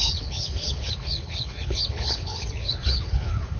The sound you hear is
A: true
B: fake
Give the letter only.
B